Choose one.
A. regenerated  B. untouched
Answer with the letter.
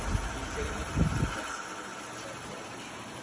B